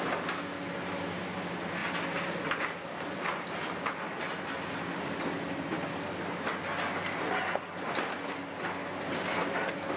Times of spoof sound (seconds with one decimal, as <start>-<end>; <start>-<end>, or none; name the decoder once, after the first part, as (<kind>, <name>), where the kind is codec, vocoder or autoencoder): none